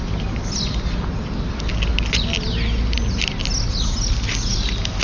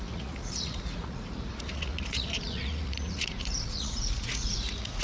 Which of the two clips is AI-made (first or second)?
second